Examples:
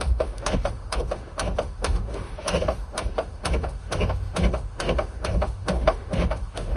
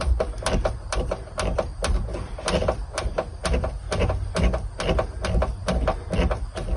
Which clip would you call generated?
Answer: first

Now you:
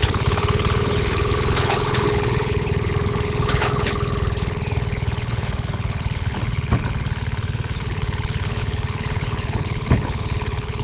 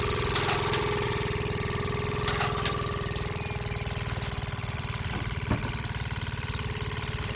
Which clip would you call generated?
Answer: first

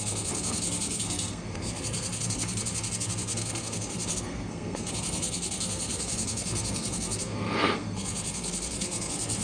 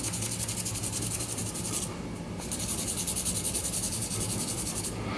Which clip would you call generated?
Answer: first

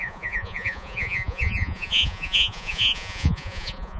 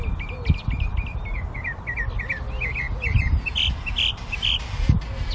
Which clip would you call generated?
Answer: first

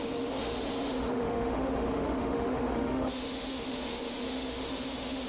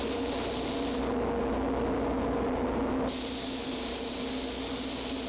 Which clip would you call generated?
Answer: first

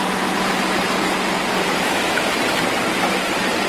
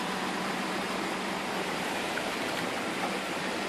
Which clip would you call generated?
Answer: second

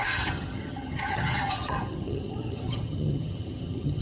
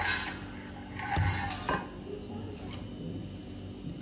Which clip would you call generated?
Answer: first